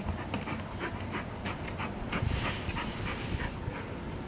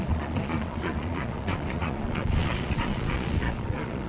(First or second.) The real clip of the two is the first